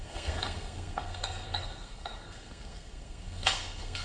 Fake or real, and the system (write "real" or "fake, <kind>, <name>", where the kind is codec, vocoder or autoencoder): fake, codec, SNAC